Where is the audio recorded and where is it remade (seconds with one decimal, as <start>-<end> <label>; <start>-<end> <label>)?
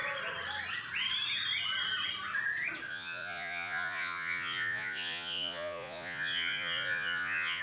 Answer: 0.0-2.9 recorded; 2.9-7.6 remade